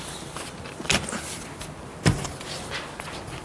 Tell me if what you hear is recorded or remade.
recorded